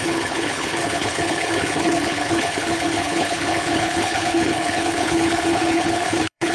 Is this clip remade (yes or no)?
yes